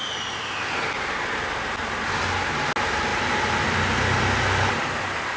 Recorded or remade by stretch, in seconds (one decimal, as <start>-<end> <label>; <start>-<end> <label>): 0.0-5.4 recorded

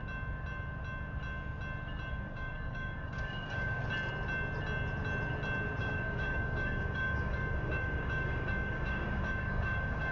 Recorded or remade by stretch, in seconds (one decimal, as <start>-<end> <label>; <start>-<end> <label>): 0.0-2.1 recorded; 2.1-3.8 remade; 3.8-5.8 recorded; 5.8-10.1 remade

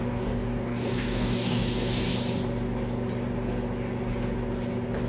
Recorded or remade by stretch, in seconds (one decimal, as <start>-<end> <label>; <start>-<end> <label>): 0.0-2.1 remade; 2.1-5.1 recorded

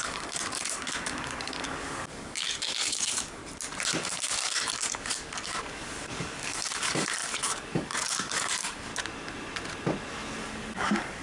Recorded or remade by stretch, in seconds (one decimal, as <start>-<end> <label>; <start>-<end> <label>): 0.0-3.4 remade; 3.4-4.0 recorded; 4.0-8.9 remade; 8.9-10.4 recorded; 10.4-11.2 remade

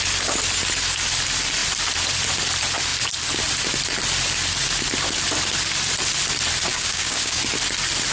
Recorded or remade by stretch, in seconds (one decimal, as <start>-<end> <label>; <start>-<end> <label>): 0.0-6.7 recorded; 6.7-7.4 remade; 7.4-8.1 recorded

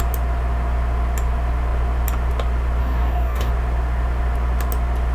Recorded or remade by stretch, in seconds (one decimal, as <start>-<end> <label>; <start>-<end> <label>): 0.0-2.8 recorded; 2.8-3.5 remade; 3.5-5.1 recorded

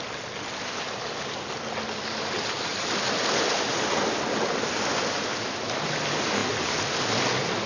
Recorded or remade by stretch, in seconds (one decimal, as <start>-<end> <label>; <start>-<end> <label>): 0.0-7.7 recorded